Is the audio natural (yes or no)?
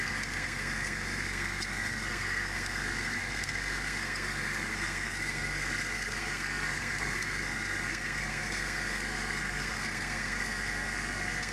no